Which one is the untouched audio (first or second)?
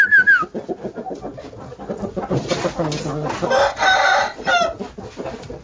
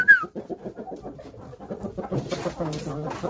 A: first